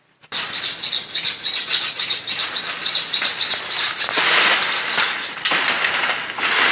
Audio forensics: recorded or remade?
recorded